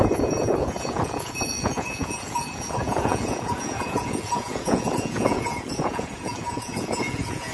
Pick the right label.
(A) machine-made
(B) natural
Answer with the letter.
A